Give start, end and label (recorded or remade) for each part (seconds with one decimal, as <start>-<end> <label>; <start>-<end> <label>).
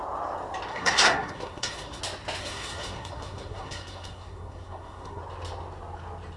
0.0-0.7 recorded; 0.7-2.0 remade; 2.0-2.4 recorded; 2.4-5.2 remade; 5.2-6.4 recorded